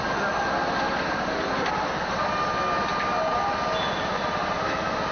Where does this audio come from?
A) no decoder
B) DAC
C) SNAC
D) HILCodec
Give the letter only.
A